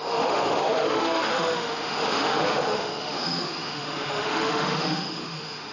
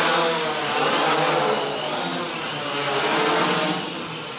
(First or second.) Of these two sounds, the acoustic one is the second